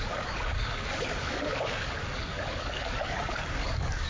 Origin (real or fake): fake